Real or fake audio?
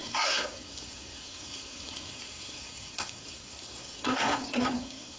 fake